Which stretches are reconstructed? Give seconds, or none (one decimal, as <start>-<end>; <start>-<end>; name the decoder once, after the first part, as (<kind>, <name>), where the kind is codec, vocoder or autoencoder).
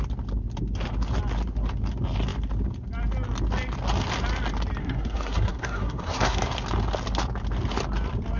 4.8-6.4 (codec, SNAC)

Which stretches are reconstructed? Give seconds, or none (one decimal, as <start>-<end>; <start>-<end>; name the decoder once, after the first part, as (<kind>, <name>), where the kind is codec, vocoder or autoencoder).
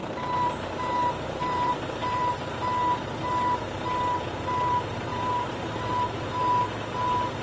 0.0-2.2 (vocoder, BigVGAN v2); 5.1-6.1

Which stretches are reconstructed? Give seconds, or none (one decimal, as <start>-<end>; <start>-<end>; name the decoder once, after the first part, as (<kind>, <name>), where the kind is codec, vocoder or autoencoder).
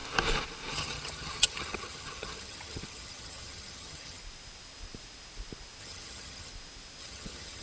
0.7-4.2 (vocoder, HiFi-GAN); 5.8-6.5; 7.0-7.6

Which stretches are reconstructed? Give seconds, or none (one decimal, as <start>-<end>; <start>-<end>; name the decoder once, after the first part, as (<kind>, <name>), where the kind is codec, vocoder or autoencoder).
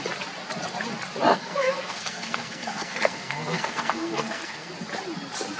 1.3-4.7 (codec, SNAC)